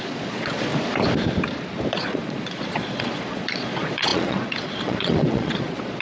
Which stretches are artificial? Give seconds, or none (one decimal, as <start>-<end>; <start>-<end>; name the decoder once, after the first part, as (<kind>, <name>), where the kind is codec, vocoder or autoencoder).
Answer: 0.0-0.7 (vocoder, Vocos); 1.9-6.0